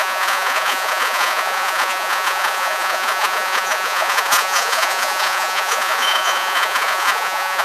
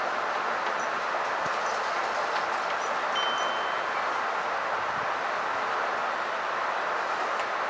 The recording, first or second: second